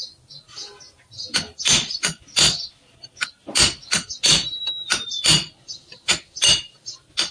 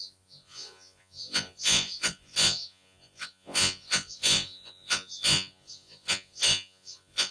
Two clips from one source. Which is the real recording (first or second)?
first